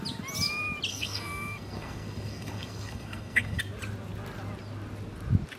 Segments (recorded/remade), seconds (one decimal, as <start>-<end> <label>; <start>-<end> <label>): 0.0-0.9 recorded; 0.9-3.6 remade; 3.6-5.6 recorded